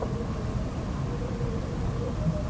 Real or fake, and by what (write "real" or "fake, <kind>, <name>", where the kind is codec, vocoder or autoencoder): real